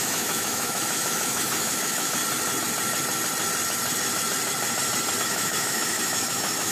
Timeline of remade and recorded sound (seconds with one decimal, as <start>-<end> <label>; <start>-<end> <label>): 0.0-2.2 remade; 2.2-5.2 recorded; 5.2-6.7 remade